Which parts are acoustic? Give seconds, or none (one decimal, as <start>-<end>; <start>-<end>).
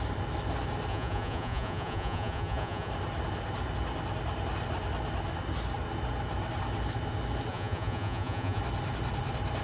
0.0-0.9; 2.9-7.5; 8.6-9.6